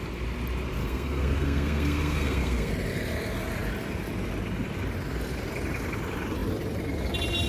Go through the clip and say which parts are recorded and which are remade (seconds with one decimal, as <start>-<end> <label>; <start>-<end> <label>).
0.0-0.8 recorded; 0.8-2.7 remade; 2.7-7.5 recorded